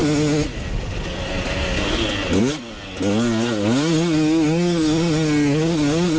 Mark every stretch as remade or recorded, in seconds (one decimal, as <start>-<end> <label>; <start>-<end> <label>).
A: 0.0-6.2 recorded